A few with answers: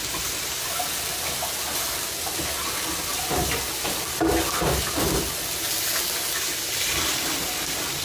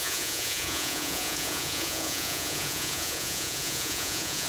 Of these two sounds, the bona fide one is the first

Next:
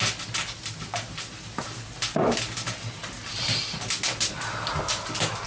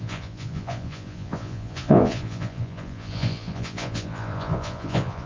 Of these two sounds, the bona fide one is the first